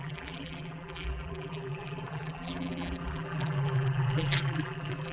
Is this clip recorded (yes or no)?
no